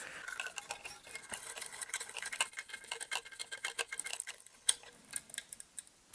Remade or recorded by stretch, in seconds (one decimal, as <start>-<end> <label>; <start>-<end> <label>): 0.0-1.3 recorded; 1.3-2.4 remade; 2.4-4.1 recorded; 4.1-4.9 remade; 4.9-6.1 recorded